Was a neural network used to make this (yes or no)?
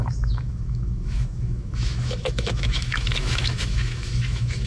yes